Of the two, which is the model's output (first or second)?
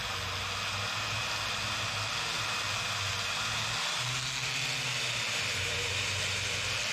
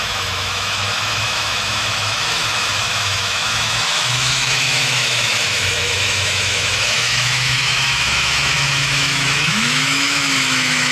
second